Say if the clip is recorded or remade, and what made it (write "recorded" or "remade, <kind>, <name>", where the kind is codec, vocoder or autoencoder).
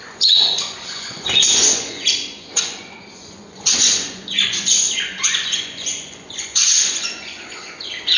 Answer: remade, vocoder, Vocos